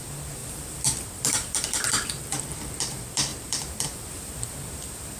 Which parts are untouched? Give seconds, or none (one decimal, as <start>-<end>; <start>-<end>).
none